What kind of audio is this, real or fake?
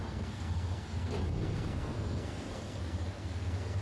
fake